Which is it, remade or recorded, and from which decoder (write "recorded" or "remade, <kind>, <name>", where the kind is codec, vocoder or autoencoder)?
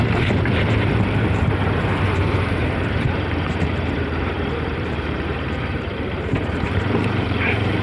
remade, vocoder, BigVGAN v2